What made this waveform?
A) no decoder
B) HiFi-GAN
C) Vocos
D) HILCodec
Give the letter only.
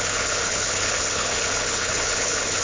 D